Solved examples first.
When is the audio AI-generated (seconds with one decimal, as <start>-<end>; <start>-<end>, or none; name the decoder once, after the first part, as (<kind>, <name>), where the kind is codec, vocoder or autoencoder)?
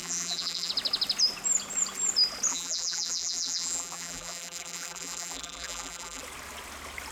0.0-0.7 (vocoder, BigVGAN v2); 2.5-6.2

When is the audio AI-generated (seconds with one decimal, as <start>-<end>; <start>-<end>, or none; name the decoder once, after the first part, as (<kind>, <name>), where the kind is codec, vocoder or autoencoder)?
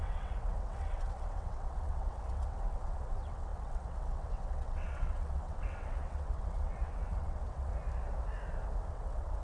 0.0-7.7 (vocoder, WaveNeXt); 8.9-9.4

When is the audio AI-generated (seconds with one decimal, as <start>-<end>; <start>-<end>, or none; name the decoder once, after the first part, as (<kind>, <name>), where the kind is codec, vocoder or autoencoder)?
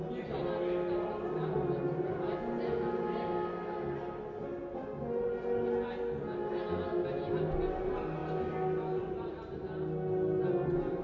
none